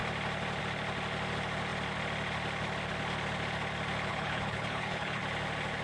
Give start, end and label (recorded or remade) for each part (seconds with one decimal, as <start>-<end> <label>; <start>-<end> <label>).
0.0-4.1 recorded; 4.1-5.2 remade; 5.2-5.8 recorded